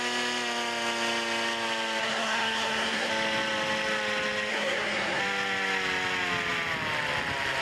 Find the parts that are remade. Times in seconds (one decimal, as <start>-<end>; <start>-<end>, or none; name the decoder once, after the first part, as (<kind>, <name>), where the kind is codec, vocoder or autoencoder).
2.0-3.1 (codec, SNAC); 4.5-5.2